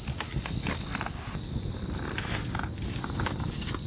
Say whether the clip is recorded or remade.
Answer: remade